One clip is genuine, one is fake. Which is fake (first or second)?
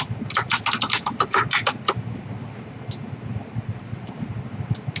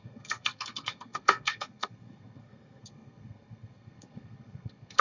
second